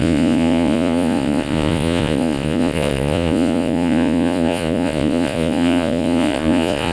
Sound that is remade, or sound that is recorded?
remade